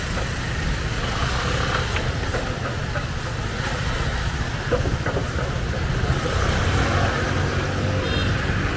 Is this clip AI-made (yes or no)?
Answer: no